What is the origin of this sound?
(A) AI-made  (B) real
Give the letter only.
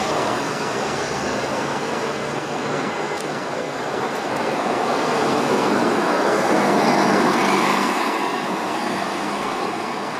A